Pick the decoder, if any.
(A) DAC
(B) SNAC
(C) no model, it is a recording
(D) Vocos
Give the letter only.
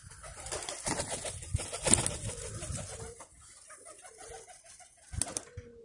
C